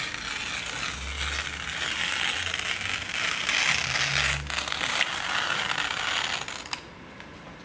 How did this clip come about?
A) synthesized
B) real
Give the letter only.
B